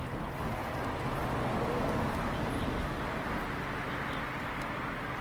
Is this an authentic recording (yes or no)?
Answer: yes